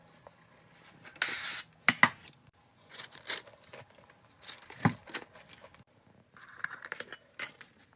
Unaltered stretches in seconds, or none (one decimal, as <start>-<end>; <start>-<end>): 0.0-2.7; 3.2-8.0